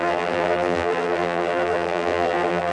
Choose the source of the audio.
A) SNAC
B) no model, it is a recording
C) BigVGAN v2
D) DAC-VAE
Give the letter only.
C